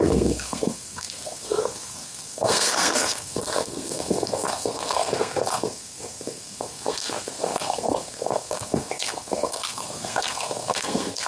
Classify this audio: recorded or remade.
remade